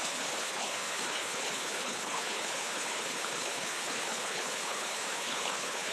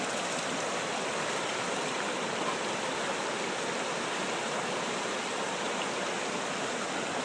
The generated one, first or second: first